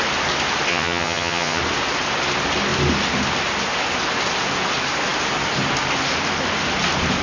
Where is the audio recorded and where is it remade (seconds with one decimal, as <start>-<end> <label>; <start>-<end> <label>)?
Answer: 0.0-0.7 recorded; 0.7-1.6 remade; 1.6-7.2 recorded